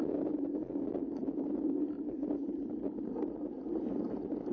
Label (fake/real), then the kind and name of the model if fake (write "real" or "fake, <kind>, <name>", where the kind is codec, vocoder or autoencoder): real